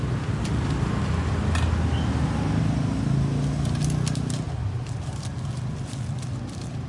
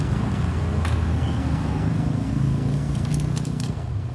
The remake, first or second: second